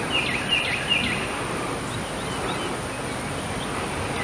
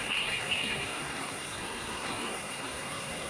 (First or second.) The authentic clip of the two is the first